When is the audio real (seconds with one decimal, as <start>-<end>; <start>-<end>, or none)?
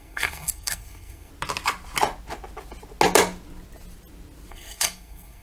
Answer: 1.3-4.5